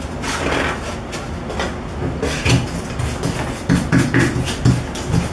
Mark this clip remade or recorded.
recorded